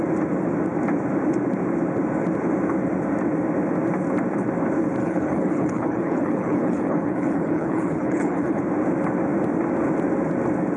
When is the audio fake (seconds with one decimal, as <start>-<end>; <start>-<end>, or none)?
5.0-8.6